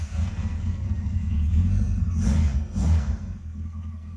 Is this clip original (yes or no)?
no